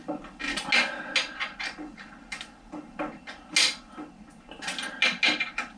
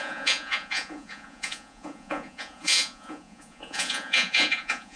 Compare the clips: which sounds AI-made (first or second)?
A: second